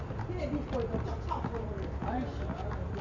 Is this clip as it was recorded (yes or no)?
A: yes